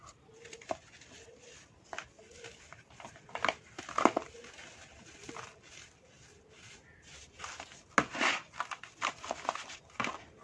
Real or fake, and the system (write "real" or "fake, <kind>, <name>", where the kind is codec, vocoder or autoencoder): real